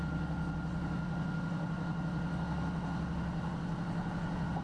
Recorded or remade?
recorded